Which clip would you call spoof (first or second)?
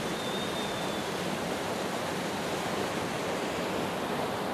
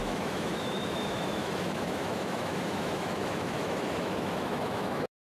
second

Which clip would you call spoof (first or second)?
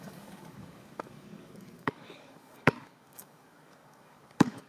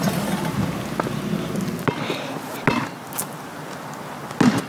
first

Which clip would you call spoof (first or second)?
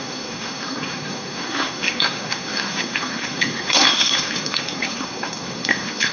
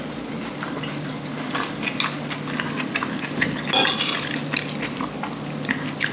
first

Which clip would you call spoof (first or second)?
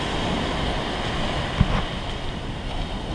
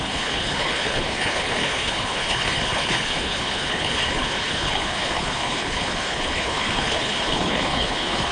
second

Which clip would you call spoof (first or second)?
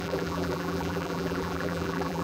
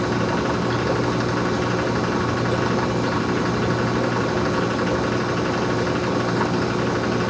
first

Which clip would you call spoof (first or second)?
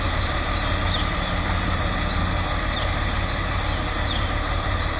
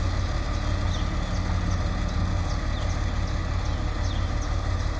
first